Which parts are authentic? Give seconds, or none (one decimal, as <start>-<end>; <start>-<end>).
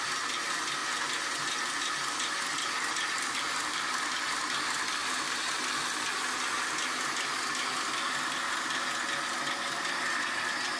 0.0-5.0; 5.5-10.8